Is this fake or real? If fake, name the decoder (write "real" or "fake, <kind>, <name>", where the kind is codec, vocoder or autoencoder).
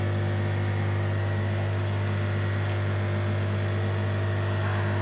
real